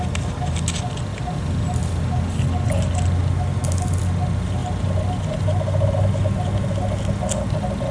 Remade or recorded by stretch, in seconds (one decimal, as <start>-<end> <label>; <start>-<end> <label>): 0.0-7.9 recorded